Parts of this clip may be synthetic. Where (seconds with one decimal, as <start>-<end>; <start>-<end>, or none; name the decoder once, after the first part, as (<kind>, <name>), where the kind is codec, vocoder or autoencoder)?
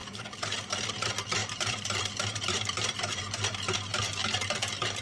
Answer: 0.0-0.6 (vocoder, BigVGAN v2); 1.4-3.2